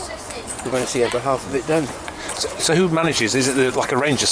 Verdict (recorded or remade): remade